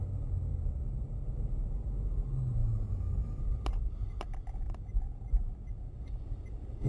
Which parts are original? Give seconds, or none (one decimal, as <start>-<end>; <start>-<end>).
0.0-2.6; 3.4-6.9

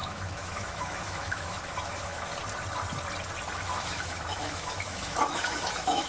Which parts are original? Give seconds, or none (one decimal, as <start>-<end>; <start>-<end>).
2.3-3.5

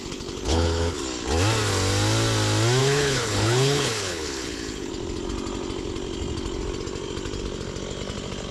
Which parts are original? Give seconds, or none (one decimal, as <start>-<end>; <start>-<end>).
1.0-2.8; 4.9-8.5

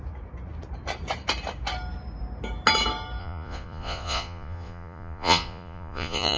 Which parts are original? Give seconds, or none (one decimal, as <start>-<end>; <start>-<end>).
0.0-3.2

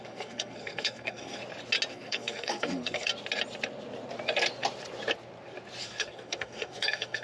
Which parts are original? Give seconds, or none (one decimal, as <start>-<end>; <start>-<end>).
1.4-1.9; 3.1-5.8

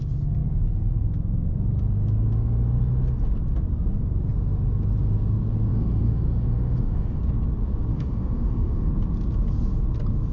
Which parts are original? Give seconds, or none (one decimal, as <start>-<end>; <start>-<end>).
0.0-5.7; 7.2-7.9; 8.9-10.3